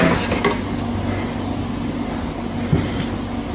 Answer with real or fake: real